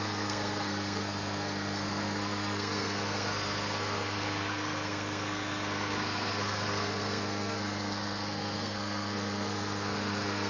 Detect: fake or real fake